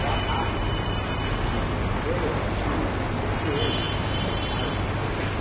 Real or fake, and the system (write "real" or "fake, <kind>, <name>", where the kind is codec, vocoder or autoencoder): real